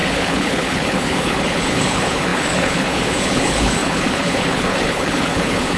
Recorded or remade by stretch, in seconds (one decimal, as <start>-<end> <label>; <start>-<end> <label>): 0.0-5.8 remade